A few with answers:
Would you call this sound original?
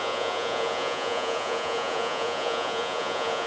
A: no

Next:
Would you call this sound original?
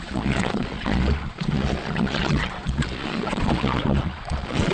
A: no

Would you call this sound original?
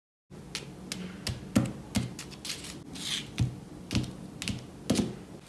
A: yes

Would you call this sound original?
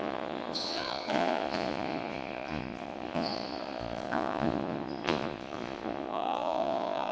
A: no